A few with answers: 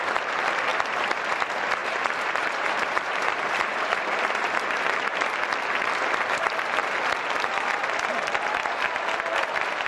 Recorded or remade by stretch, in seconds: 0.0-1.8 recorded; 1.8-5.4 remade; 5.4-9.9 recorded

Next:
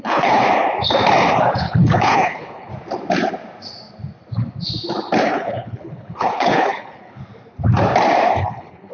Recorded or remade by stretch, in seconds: 0.0-0.4 remade; 0.4-1.6 recorded; 1.6-2.7 remade; 2.7-5.2 recorded; 5.2-7.2 remade; 7.2-8.4 recorded; 8.4-8.9 remade